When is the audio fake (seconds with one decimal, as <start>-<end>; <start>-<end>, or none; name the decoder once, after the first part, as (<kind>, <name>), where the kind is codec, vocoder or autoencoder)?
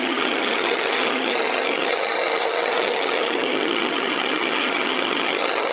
0.0-5.7 (vocoder, HiFi-GAN)